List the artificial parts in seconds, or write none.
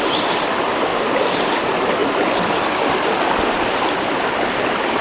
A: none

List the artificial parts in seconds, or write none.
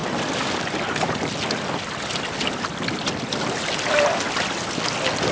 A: none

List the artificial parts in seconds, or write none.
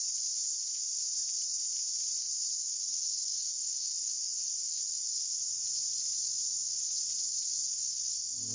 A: 2.7-5.3 (codec, SNAC); 7.7-8.5